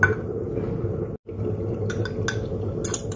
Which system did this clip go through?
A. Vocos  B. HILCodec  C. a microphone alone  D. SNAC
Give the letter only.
C